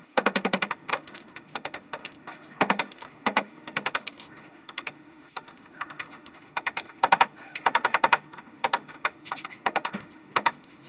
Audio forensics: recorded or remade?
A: remade